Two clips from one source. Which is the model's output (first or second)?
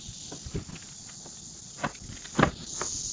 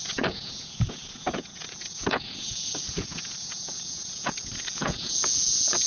second